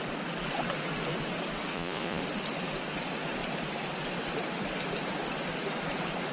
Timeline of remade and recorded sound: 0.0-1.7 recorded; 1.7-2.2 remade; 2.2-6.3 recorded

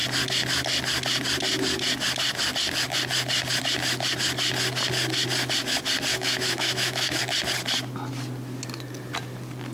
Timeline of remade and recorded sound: 0.0-6.1 recorded; 6.1-7.2 remade; 7.2-9.7 recorded

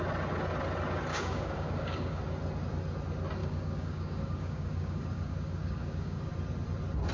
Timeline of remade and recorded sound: 0.0-1.1 recorded; 1.1-2.2 remade; 2.2-3.4 recorded; 3.4-6.3 remade; 6.3-7.1 recorded

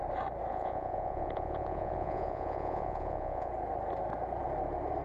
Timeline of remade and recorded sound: 0.0-0.5 recorded; 0.5-3.5 remade; 3.5-5.0 recorded

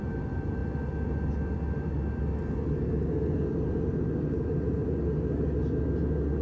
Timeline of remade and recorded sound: 0.0-6.4 recorded

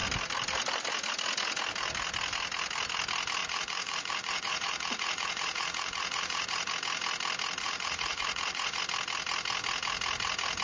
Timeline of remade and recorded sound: 0.0-3.4 recorded; 3.4-6.7 remade; 6.7-7.6 recorded; 7.6-8.8 remade; 8.8-10.6 recorded